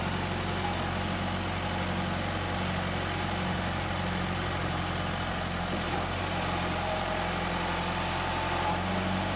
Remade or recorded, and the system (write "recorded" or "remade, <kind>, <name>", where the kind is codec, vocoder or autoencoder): recorded